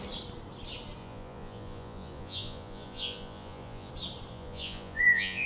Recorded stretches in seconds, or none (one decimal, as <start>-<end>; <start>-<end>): 0.0-1.0; 3.9-4.3